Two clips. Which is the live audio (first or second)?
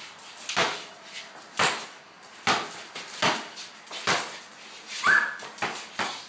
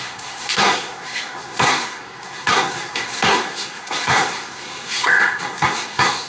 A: first